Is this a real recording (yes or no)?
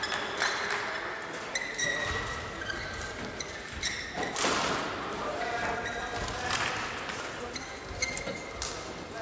yes